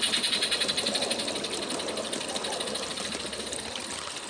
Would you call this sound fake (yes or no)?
no